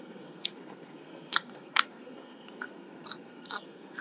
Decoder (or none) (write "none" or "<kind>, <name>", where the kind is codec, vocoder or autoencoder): codec, SNAC